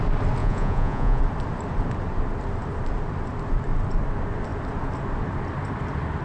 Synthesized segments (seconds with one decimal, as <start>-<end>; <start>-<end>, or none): 0.4-1.2